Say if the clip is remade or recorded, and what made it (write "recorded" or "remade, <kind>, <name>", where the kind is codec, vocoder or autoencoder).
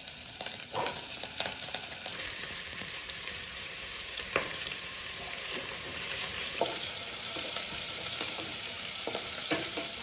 remade, vocoder, BigVGAN v2